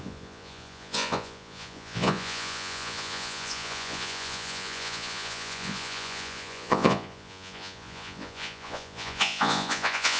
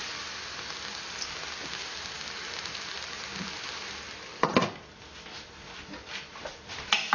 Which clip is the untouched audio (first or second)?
second